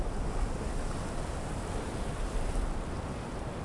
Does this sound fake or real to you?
real